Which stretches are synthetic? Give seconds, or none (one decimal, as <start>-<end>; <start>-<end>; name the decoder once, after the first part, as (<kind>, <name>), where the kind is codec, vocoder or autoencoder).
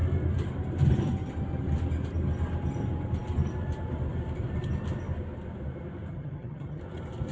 6.1-6.8 (vocoder, HiFi-GAN)